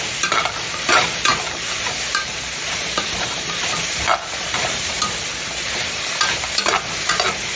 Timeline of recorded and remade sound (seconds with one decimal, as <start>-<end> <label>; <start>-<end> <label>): 0.0-7.6 remade